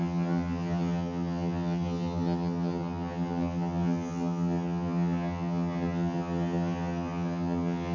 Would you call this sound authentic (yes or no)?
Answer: no